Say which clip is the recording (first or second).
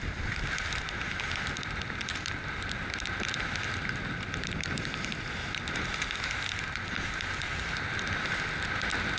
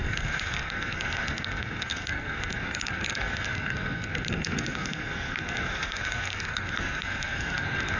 first